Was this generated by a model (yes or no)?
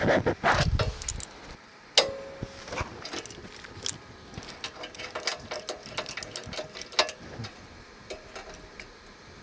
no